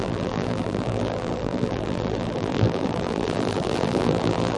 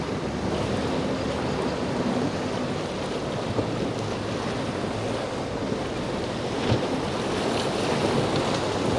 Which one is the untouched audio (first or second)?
second